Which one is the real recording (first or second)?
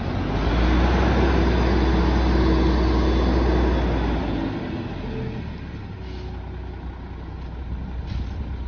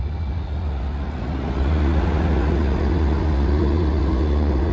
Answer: first